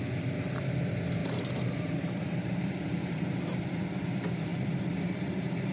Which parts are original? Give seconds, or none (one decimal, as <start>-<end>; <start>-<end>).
0.0-1.2; 3.6-4.5